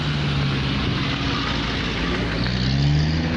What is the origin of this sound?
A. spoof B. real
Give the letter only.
B